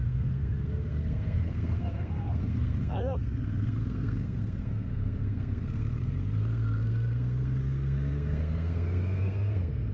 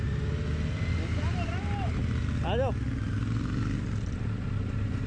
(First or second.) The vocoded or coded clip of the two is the first